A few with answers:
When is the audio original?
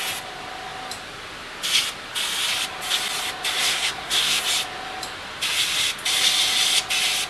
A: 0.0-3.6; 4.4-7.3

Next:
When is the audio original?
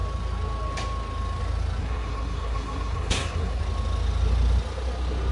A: 0.0-1.8; 3.6-5.3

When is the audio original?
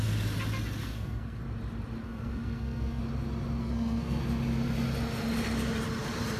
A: 0.0-0.8; 1.4-2.0; 3.0-3.6; 4.2-6.4